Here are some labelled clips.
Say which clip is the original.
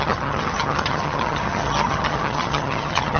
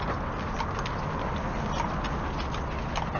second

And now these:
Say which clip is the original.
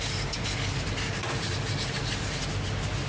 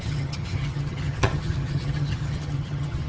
first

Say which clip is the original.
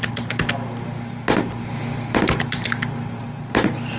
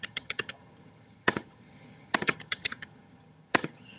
first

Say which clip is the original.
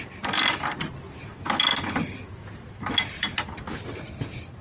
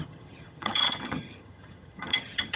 first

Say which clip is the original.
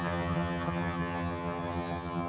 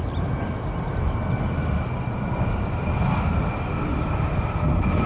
second